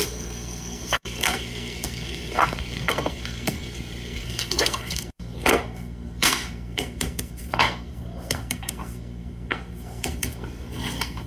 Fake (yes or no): yes